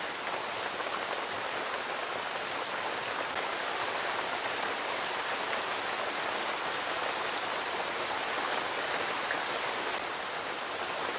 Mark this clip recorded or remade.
recorded